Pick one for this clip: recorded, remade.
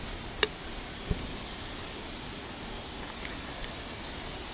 recorded